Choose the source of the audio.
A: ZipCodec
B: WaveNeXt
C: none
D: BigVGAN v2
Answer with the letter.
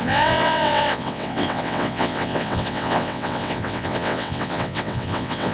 B